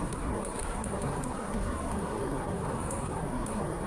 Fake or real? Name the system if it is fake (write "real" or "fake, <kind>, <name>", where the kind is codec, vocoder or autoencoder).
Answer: fake, codec, SNAC